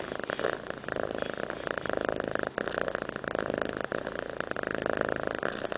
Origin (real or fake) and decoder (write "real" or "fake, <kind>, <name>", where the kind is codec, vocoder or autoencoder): real